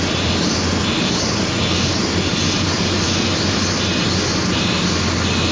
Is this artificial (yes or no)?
no